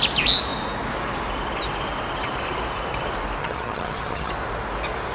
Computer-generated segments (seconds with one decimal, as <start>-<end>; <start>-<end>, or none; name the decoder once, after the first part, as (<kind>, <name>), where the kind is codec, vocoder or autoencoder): 3.4-4.3 (vocoder, HiFi-GAN)